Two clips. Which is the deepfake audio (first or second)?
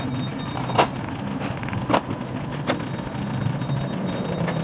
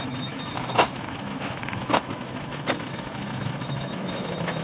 second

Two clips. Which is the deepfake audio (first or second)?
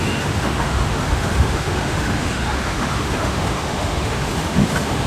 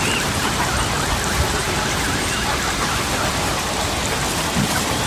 first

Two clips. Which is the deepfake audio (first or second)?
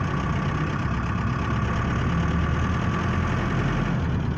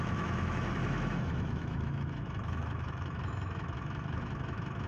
second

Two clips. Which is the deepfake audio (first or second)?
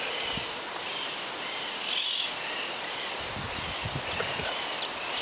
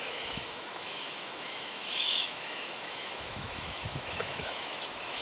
second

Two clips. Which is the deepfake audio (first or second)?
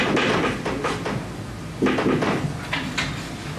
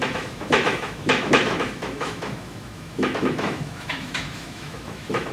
second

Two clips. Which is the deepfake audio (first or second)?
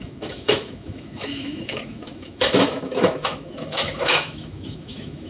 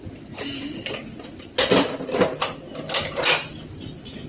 first